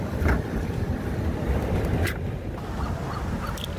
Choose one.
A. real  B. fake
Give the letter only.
A